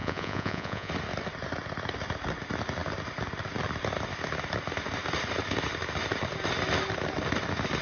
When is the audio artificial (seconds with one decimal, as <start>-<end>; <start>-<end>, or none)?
0.0-0.9